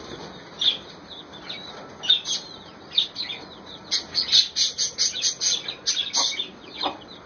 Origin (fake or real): real